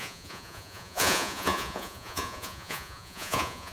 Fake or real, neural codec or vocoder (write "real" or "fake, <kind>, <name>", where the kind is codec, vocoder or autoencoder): fake, vocoder, Vocos